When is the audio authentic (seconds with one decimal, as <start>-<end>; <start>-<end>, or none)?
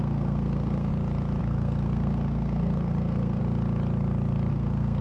0.9-1.4; 3.4-4.5